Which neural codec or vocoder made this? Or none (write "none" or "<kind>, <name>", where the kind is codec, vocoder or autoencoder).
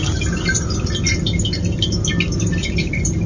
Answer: none